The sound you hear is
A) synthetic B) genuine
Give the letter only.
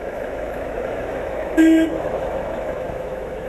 A